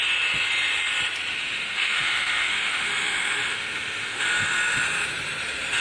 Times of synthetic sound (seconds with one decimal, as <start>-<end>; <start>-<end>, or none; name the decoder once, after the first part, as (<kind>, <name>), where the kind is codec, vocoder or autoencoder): 1.3-4.8 (autoencoder, DAC-VAE)